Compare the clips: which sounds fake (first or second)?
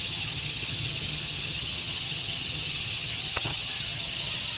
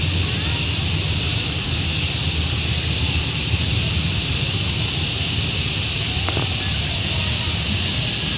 first